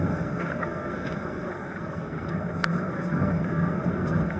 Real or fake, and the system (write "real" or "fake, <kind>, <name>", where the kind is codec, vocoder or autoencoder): fake, codec, SNAC